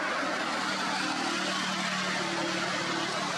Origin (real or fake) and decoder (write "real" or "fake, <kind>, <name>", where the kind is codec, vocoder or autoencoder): real